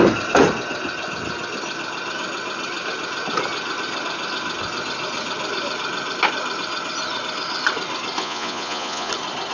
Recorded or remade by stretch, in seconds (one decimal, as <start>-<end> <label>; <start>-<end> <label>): 0.0-8.2 recorded; 8.2-9.1 remade; 9.1-9.5 recorded